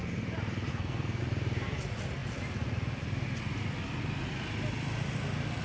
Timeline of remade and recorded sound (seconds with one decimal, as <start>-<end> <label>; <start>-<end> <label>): 0.0-0.7 recorded; 0.7-1.2 remade; 1.2-5.6 recorded